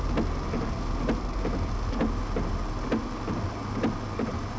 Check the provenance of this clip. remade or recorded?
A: recorded